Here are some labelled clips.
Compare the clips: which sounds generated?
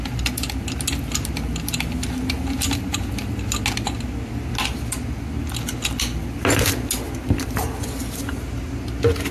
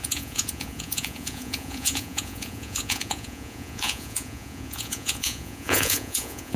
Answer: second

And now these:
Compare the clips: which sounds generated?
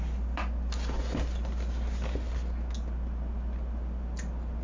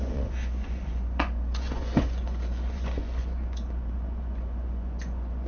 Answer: second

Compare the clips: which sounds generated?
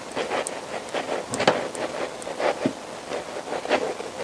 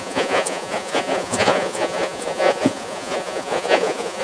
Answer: second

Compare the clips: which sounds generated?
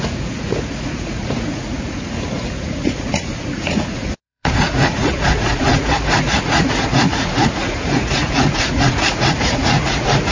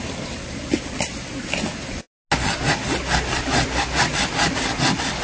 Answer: first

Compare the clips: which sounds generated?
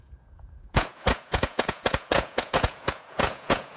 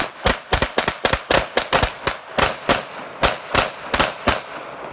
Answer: first